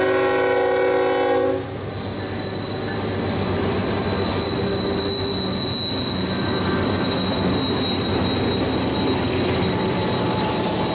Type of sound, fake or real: real